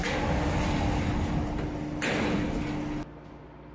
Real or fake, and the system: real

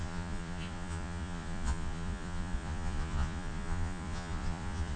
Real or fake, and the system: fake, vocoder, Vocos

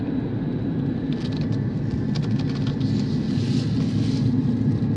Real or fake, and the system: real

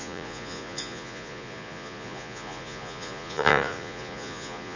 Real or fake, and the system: fake, vocoder, Vocos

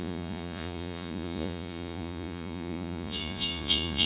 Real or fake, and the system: fake, vocoder, Vocos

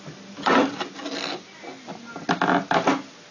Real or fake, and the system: real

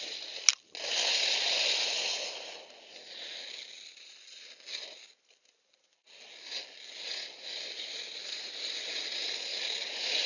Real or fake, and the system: real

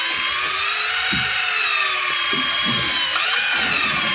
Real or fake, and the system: real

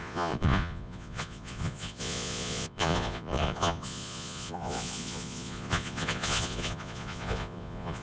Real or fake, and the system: fake, vocoder, Vocos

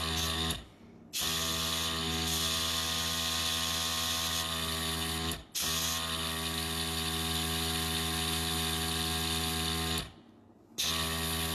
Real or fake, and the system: real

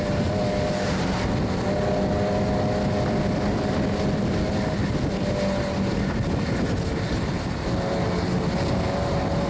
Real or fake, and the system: real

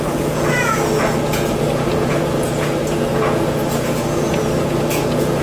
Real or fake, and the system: fake, vocoder, Vocos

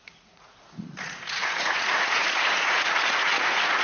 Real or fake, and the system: fake, vocoder, Vocos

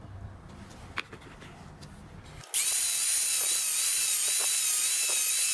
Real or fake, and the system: real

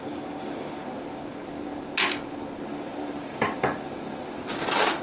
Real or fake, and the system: real